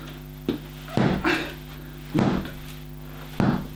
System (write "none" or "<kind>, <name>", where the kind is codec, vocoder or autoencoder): none